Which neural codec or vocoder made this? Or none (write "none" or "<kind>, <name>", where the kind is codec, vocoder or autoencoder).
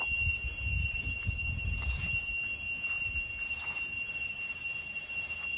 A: vocoder, BigVGAN v2